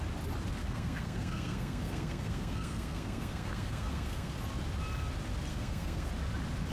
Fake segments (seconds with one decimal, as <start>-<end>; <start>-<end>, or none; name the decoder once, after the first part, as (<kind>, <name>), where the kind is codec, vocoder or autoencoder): 0.6-4.3 (codec, SNAC); 5.5-6.1